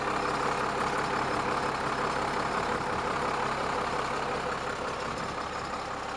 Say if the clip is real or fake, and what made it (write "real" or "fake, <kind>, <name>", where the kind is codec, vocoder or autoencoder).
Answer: real